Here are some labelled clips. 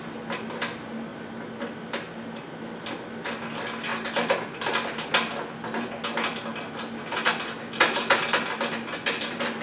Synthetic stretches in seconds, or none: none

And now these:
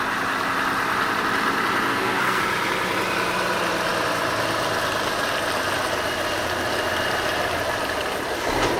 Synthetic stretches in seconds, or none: 1.9-2.4

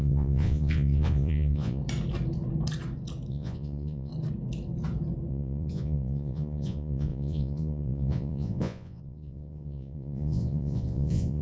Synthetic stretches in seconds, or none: 0.0-1.8; 3.3-4.1; 5.3-11.4